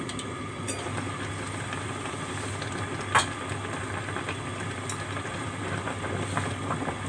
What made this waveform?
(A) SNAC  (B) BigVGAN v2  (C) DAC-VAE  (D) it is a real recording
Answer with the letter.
D